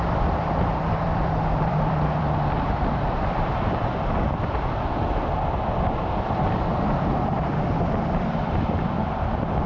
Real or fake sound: fake